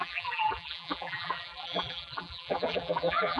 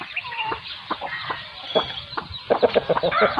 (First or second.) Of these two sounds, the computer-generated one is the first